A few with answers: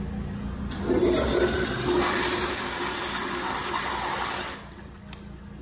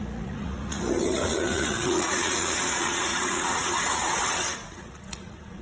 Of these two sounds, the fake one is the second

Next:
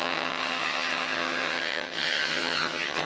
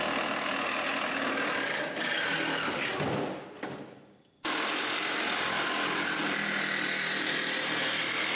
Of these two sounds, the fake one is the first